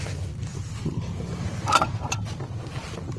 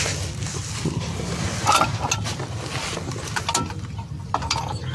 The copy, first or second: first